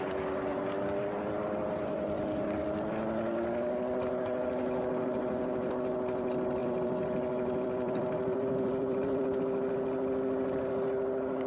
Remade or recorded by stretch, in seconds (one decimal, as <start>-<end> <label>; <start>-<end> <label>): 0.0-6.6 recorded; 6.6-9.4 remade; 9.4-11.5 recorded